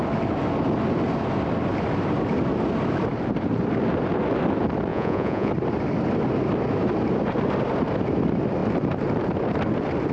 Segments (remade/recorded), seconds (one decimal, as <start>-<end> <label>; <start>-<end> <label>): 0.0-4.9 recorded; 4.9-5.5 remade; 5.5-10.1 recorded

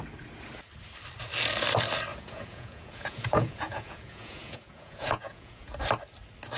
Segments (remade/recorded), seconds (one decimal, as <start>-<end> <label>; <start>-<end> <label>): 0.0-2.1 recorded; 2.1-5.7 remade; 5.7-6.6 recorded

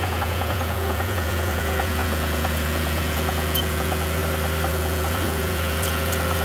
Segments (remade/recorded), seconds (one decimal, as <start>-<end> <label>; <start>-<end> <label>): 0.0-4.2 remade; 4.2-4.7 recorded; 4.7-6.4 remade

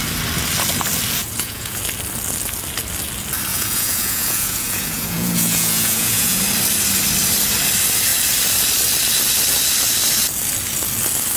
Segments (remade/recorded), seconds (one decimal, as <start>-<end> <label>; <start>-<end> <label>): 0.0-1.2 recorded; 1.2-1.8 remade; 1.8-3.5 recorded; 3.5-6.4 remade; 6.4-11.4 recorded

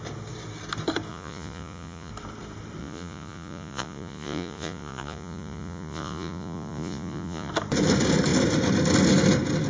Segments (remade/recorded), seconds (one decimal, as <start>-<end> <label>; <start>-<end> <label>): 0.0-1.1 recorded; 1.1-2.1 remade; 2.1-2.8 recorded; 2.8-7.5 remade; 7.5-9.7 recorded

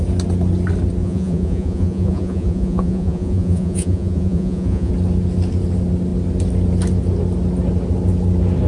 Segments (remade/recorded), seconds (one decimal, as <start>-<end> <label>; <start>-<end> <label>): 0.0-1.0 recorded; 1.0-4.9 remade; 4.9-8.7 recorded